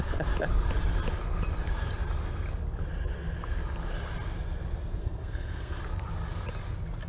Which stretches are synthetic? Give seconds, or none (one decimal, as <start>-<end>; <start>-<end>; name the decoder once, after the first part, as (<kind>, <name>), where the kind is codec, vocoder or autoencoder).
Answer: 5.0-5.8 (codec, SNAC)